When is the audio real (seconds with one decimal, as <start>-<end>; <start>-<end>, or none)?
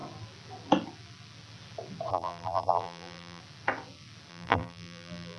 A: 0.0-2.1; 3.4-4.3